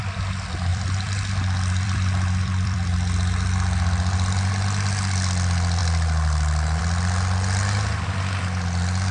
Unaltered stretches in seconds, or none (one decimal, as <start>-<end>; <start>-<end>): 0.0-0.7; 4.5-9.1